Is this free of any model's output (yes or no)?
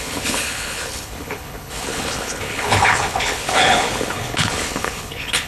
no